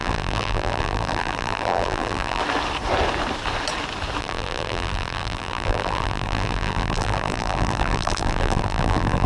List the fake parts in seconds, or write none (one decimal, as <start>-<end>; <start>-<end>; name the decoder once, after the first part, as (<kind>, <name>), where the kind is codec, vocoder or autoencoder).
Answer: 0.0-2.4 (vocoder, BigVGAN v2); 4.2-9.3